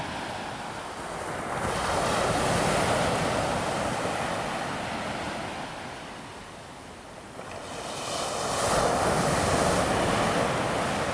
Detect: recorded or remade recorded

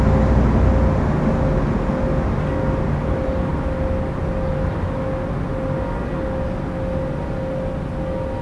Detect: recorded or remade recorded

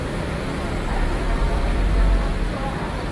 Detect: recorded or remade remade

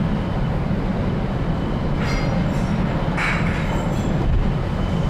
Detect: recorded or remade recorded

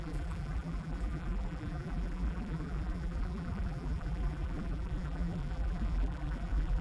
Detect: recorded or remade remade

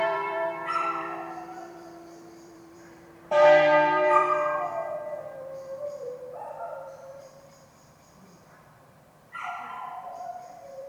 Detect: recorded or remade remade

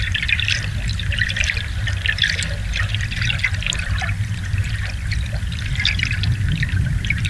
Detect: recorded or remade recorded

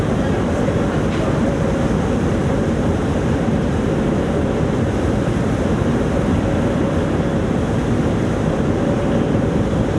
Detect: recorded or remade remade